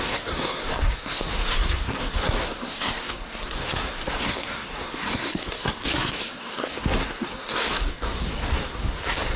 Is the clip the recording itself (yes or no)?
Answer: no